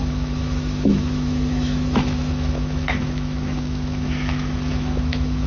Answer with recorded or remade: remade